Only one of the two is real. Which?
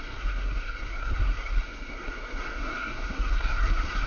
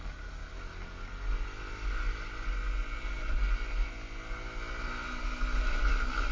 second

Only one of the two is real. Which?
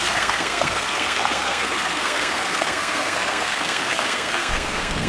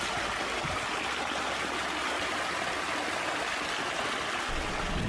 second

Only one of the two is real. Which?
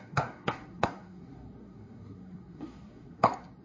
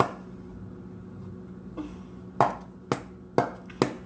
second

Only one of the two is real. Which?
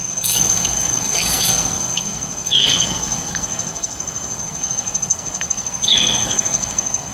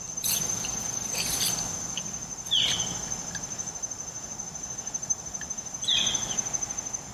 second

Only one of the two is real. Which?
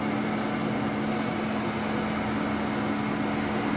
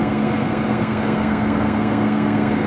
first